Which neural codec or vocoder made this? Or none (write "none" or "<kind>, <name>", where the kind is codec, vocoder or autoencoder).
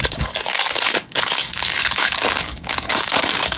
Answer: codec, DAC